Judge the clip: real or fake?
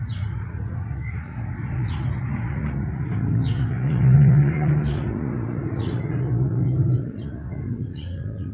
fake